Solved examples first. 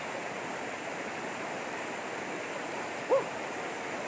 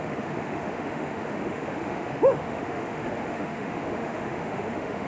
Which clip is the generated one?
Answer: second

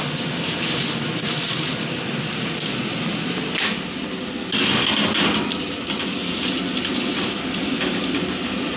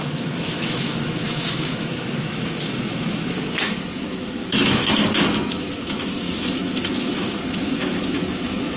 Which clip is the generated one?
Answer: second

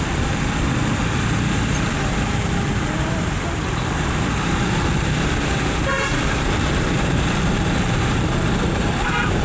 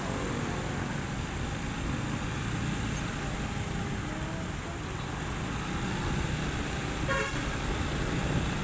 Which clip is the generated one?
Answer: first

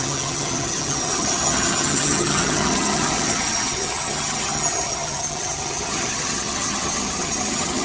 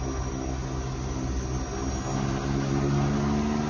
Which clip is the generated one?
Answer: first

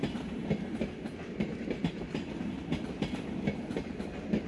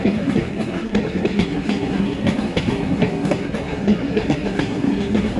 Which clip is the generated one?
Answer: second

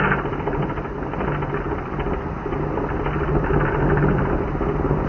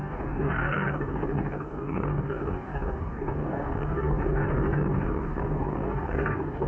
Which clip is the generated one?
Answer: second